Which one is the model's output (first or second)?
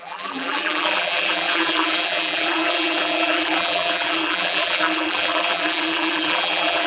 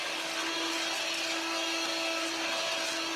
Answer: first